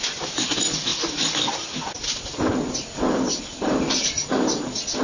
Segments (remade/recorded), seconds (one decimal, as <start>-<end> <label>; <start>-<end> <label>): 0.0-5.0 recorded